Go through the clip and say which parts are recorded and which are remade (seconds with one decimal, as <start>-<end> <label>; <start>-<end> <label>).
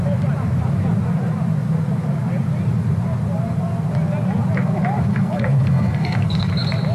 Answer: 0.0-5.1 recorded; 5.1-6.5 remade; 6.5-6.9 recorded